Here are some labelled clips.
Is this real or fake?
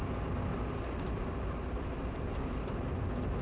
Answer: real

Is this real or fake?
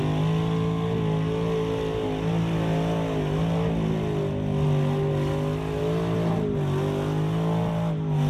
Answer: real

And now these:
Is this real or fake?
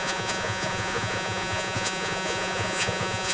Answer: fake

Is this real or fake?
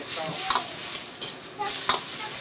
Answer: real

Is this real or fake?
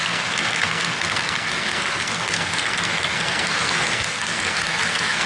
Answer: fake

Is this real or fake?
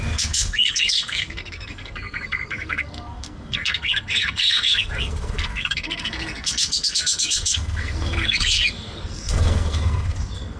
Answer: fake